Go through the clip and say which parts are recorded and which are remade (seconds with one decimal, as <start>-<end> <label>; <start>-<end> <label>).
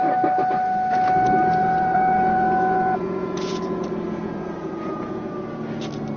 0.0-1.6 recorded; 1.6-5.3 remade; 5.3-6.2 recorded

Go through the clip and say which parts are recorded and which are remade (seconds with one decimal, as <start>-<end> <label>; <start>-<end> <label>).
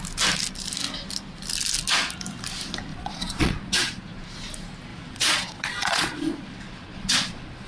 0.0-2.9 recorded; 2.9-4.0 remade; 4.0-4.9 recorded; 4.9-7.7 remade